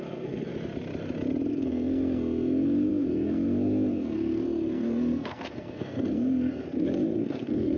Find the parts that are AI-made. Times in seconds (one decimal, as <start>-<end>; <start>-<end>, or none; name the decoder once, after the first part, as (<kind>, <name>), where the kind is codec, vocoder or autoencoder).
0.0-0.5 (codec, SNAC); 1.5-7.8